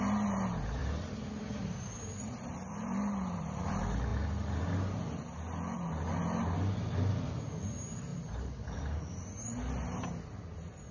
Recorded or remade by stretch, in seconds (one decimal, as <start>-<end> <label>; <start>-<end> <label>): 0.0-0.8 recorded; 0.8-3.6 remade; 3.6-8.1 recorded; 8.1-9.0 remade; 9.0-10.9 recorded